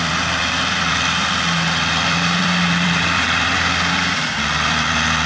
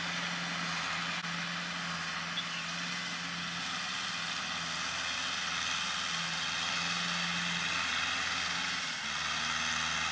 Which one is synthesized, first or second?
first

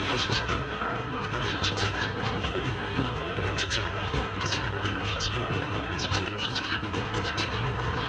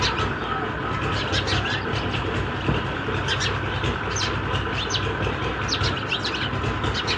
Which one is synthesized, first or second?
first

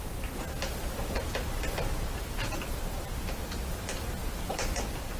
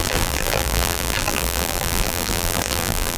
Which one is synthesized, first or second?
second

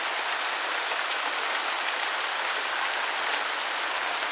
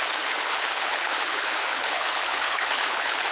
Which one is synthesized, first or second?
second